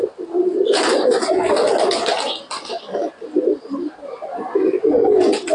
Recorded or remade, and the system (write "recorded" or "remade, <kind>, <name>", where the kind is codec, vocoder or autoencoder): recorded